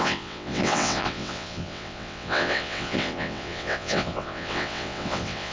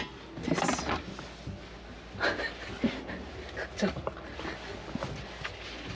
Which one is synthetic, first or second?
first